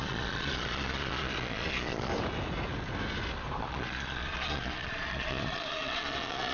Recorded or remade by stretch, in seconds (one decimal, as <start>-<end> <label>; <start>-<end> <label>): 0.0-2.1 remade; 2.1-3.6 recorded; 3.6-6.5 remade